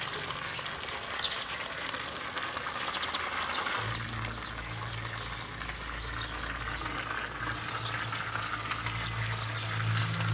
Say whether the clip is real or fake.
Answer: real